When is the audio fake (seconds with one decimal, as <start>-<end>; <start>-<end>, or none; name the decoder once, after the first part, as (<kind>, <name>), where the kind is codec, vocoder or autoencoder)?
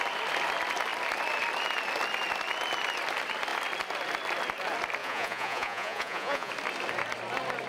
5.0-6.5 (vocoder, Vocos)